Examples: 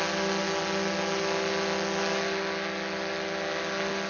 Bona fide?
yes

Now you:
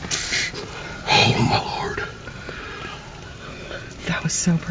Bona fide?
yes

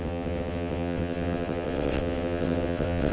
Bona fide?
no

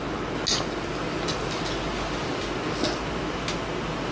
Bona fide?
yes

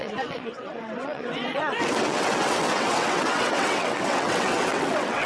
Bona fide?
no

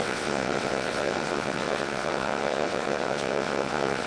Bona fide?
no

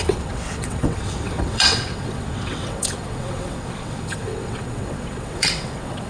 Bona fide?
no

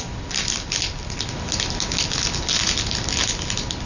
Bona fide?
yes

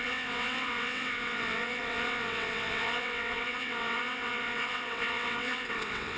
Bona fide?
no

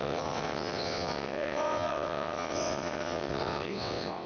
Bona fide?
no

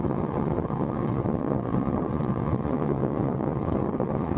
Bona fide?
no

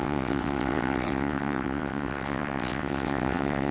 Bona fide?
no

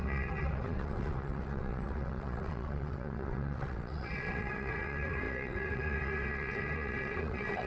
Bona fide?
no